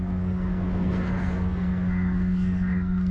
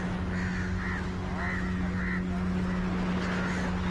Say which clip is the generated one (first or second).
first